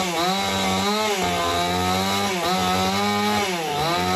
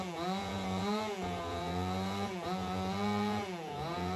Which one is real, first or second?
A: first